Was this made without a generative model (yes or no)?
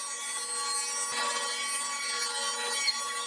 yes